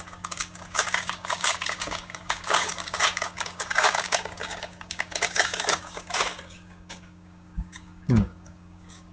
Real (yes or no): no